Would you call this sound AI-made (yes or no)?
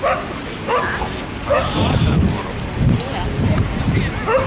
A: no